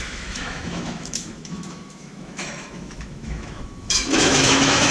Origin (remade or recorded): remade